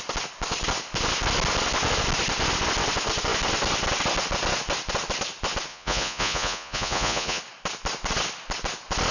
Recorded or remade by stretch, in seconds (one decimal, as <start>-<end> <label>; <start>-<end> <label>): 0.0-5.7 recorded; 5.7-7.4 remade; 7.4-9.1 recorded